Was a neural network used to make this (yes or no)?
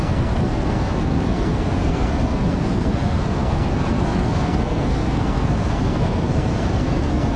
yes